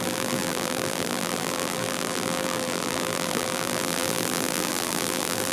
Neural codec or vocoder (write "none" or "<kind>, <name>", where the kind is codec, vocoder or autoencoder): vocoder, BigVGAN v2